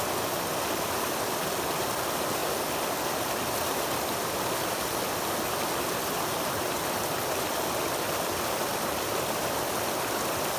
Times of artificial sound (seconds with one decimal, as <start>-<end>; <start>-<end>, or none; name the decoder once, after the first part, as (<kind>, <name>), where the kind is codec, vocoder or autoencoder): none